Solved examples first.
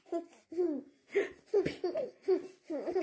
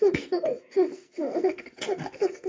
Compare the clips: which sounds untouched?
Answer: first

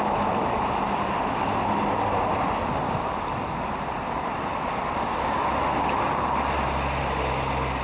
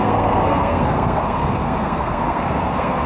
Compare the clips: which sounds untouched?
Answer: first